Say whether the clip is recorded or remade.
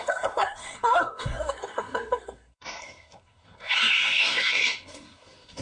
remade